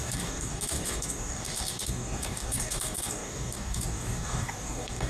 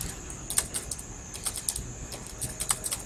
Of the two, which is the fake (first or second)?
first